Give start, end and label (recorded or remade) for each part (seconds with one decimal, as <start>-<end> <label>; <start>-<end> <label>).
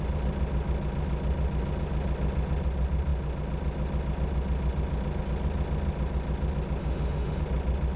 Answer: 0.0-6.8 recorded; 6.8-7.4 remade; 7.4-8.0 recorded